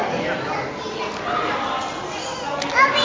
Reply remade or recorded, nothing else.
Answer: recorded